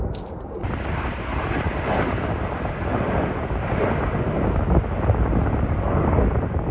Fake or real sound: real